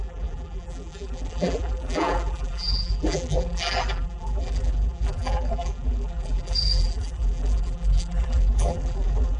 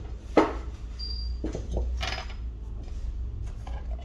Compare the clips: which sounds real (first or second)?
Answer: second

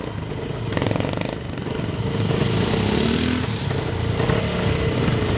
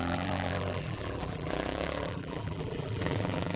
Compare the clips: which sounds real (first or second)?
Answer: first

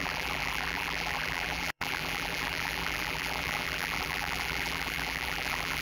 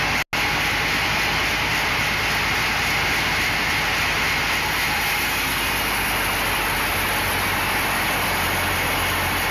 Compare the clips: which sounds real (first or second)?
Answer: second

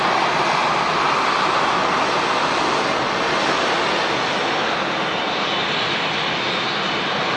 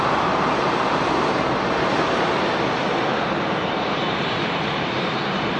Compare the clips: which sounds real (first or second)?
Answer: first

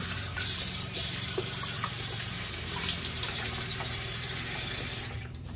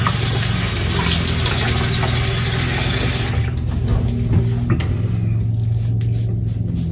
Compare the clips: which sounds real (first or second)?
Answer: second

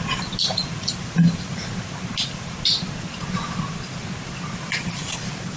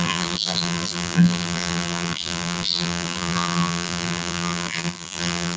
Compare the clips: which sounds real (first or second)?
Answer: first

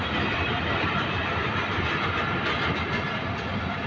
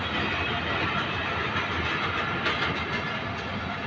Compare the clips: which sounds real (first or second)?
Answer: second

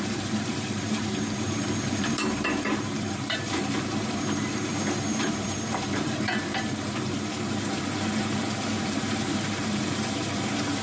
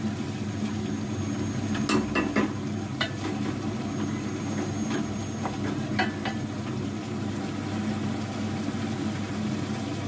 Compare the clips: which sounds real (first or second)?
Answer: second